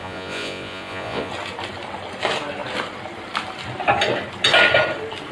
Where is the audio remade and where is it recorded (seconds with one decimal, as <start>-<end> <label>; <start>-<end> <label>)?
0.0-1.3 remade; 1.3-5.3 recorded